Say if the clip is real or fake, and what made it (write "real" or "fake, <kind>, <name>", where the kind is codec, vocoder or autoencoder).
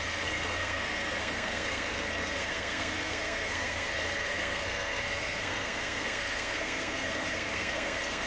fake, codec, SNAC